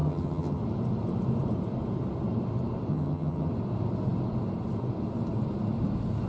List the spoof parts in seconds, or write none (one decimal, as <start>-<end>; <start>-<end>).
0.0-0.6; 2.9-3.5